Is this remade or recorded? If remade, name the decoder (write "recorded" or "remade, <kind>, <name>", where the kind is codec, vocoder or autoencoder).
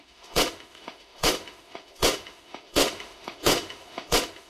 remade, autoencoder, DAC-VAE